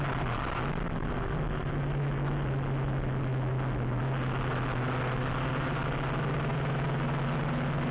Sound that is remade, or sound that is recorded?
recorded